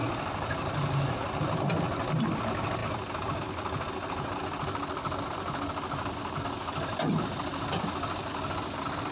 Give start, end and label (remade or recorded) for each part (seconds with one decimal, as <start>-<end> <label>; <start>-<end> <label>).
0.0-9.1 recorded